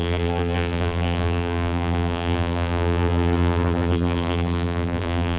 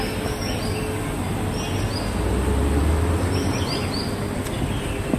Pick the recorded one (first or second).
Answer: second